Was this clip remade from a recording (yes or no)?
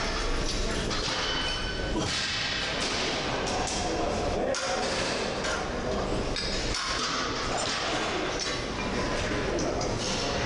no